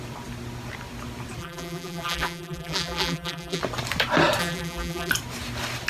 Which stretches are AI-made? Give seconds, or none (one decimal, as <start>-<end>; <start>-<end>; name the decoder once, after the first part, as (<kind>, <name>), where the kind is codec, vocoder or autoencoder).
1.4-3.6 (vocoder, BigVGAN v2); 4.4-5.1